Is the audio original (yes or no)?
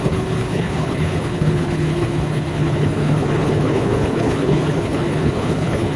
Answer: no